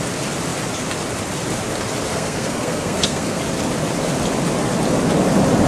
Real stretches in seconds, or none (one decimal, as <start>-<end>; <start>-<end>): 0.0-2.1; 3.4-5.7

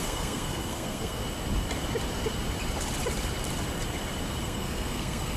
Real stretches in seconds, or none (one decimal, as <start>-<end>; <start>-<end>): 1.2-4.4

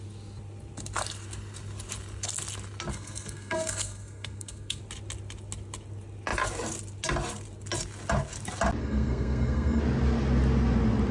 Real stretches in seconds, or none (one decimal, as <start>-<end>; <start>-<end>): 0.0-2.9; 4.8-8.8; 9.8-11.1

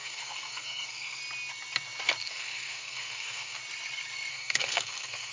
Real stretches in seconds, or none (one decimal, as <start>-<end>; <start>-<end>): 1.2-2.3; 3.6-4.3

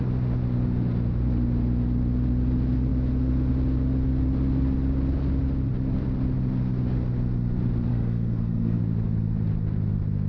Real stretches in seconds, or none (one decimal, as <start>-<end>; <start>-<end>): 0.0-7.9; 8.8-10.3

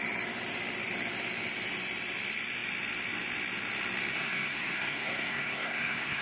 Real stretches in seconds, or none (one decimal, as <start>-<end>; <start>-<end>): 0.0-4.1